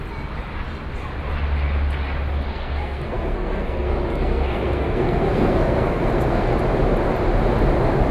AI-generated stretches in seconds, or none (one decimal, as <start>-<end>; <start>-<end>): 2.5-6.6